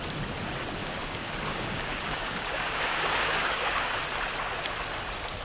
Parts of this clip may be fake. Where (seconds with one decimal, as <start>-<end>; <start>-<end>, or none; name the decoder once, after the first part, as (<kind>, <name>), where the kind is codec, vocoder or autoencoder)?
0.8-4.0 (codec, DAC)